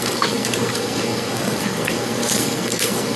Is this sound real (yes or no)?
no